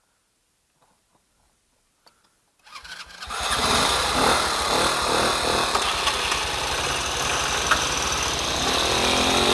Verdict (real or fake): real